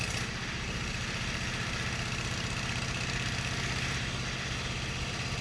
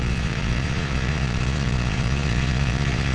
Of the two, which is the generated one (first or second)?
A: second